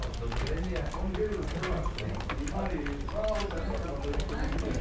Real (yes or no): yes